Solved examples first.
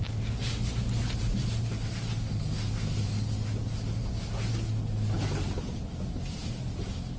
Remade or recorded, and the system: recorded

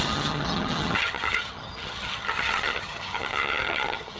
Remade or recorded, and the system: remade, vocoder, HiFi-GAN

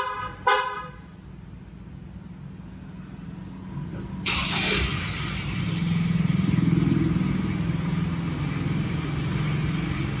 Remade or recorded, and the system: recorded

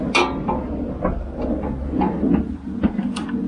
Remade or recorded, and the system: recorded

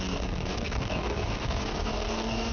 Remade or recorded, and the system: remade, codec, DAC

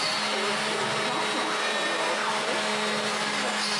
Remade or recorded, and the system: recorded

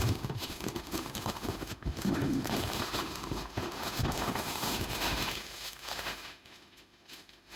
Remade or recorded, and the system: remade, autoencoder, DAC-VAE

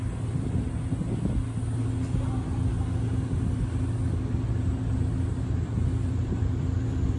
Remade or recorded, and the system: recorded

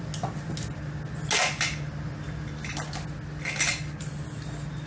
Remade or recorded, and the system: recorded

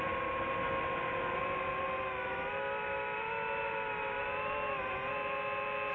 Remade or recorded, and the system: recorded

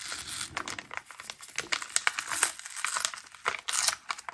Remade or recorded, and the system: recorded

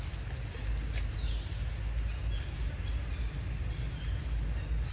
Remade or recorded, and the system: recorded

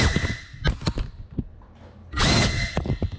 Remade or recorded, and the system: recorded